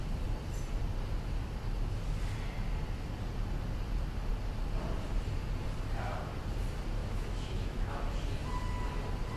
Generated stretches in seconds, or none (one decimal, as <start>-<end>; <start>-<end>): 7.0-8.0